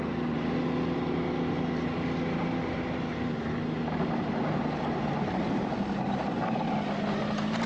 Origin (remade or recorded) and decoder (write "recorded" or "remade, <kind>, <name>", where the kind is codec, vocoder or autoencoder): recorded